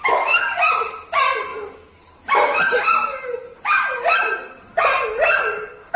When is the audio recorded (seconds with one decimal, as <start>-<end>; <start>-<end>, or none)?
0.0-6.0